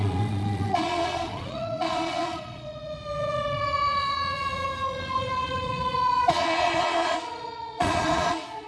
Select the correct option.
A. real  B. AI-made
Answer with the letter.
B